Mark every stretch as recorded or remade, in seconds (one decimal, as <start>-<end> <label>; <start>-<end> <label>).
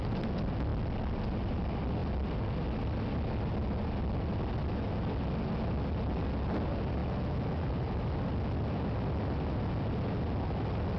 0.0-7.0 recorded; 7.0-7.7 remade; 7.7-11.0 recorded